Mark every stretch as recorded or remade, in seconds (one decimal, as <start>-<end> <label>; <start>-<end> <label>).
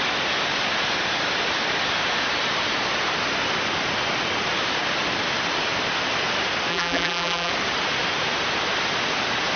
0.0-6.7 recorded; 6.7-7.5 remade; 7.5-9.6 recorded